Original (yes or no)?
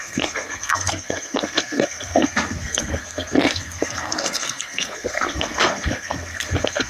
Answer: no